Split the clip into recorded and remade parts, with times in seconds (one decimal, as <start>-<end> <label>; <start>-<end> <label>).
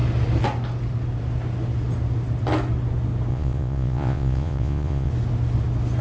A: 0.0-3.3 recorded; 3.3-5.1 remade; 5.1-6.0 recorded